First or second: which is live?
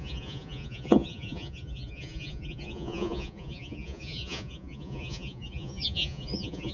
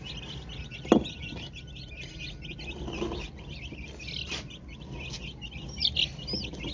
second